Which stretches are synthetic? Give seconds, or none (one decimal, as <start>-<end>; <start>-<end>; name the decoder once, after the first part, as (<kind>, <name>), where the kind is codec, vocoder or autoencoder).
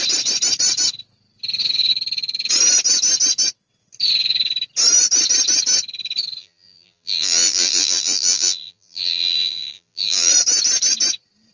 6.4-10.3 (vocoder, BigVGAN v2)